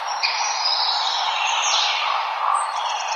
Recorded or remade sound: recorded